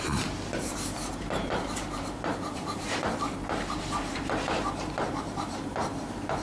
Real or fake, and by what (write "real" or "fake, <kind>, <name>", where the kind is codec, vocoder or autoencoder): fake, vocoder, BigVGAN v2